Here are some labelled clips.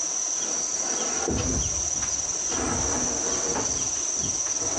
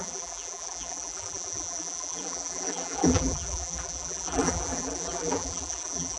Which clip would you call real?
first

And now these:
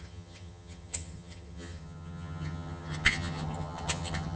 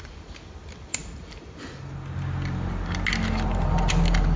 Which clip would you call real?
second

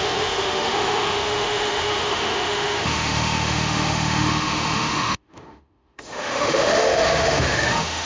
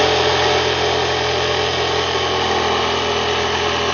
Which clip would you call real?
second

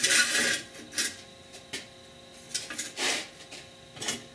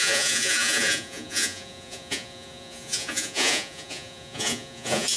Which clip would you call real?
first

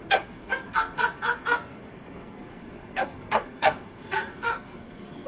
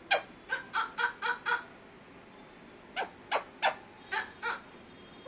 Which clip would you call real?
second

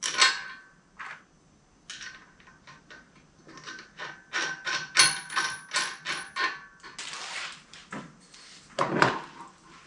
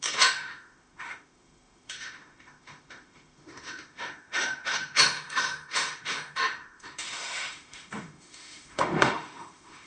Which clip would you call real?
first